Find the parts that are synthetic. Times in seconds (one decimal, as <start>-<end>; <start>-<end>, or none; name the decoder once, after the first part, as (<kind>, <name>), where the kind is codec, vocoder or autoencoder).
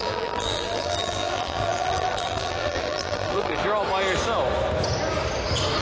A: 0.0-3.6 (vocoder, BigVGAN v2)